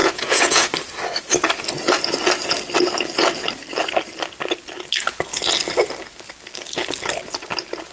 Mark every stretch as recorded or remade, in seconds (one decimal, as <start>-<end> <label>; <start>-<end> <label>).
0.0-0.7 remade; 0.7-7.9 recorded